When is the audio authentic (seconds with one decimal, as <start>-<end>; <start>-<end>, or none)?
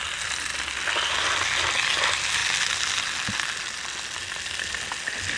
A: 0.0-5.4